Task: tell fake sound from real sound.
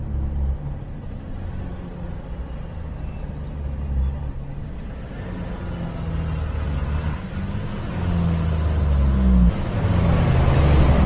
real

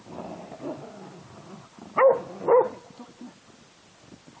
real